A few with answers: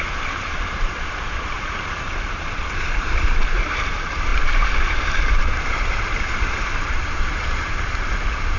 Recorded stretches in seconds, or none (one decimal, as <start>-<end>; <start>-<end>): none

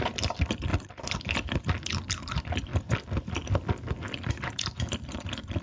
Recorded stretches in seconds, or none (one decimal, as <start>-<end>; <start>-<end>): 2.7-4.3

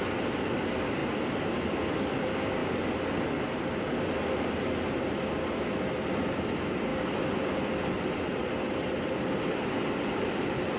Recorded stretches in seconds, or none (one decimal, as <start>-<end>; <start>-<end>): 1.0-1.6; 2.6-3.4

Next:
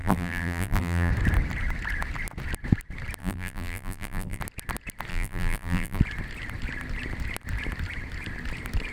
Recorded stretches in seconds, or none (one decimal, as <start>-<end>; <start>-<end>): 1.1-3.2; 4.4-5.1; 6.0-8.9

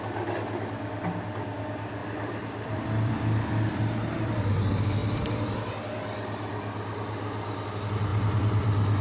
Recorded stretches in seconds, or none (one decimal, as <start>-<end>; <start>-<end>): 0.0-2.0; 4.5-8.1

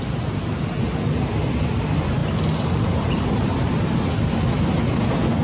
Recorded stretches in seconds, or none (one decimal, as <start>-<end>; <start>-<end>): 0.0-2.2; 3.8-5.4